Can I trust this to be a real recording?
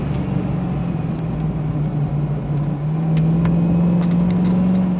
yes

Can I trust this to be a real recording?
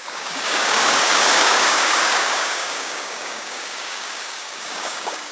no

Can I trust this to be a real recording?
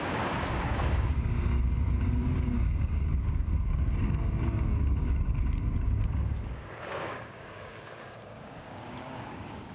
no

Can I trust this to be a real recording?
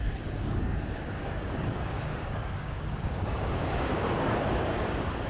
no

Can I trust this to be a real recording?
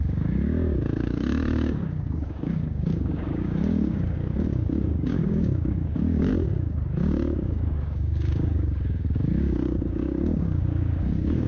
no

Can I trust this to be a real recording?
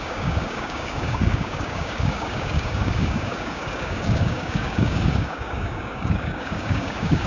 no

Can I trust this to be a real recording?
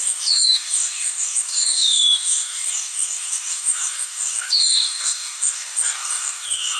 no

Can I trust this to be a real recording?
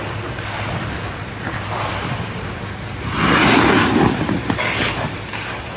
yes